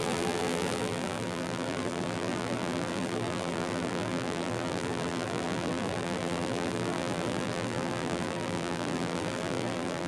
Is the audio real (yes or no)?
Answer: no